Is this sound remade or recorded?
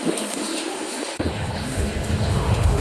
remade